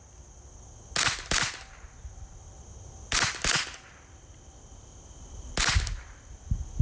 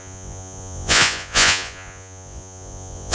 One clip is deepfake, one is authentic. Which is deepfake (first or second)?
second